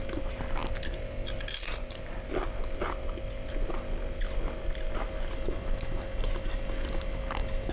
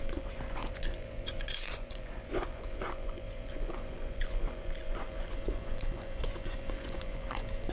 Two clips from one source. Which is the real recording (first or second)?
first